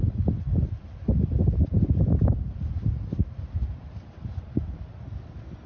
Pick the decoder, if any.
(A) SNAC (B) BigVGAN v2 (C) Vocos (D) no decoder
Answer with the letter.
D